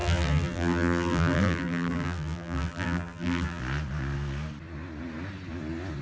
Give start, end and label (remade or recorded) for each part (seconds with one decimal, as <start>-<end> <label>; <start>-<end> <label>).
0.0-3.6 remade; 3.6-6.0 recorded